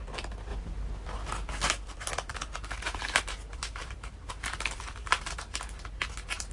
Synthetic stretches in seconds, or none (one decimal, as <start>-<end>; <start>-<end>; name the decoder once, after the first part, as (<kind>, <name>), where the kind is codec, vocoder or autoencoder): 2.3-5.3 (vocoder, BigVGAN v2)